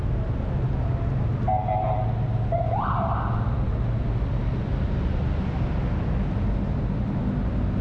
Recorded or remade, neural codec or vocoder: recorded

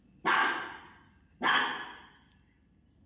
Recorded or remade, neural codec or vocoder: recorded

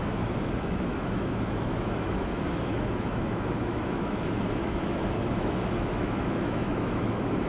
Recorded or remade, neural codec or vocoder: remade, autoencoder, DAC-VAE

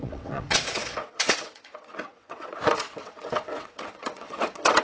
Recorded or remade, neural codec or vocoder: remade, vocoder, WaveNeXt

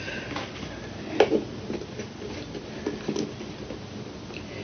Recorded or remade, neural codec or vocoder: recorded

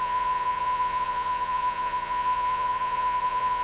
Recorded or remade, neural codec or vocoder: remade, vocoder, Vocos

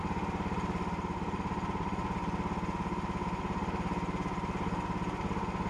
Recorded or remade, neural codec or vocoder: recorded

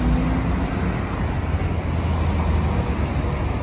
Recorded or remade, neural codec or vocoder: recorded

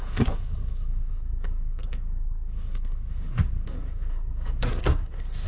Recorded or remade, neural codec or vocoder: remade, codec, SNAC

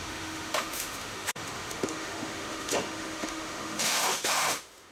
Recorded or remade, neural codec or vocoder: remade, autoencoder, DAC-VAE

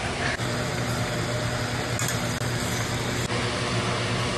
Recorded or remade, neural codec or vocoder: recorded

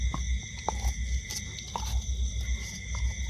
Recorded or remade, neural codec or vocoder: recorded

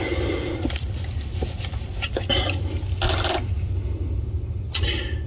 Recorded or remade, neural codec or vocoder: recorded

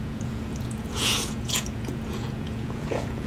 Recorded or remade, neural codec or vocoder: remade, vocoder, Vocos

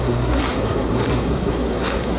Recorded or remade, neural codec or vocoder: remade, codec, SNAC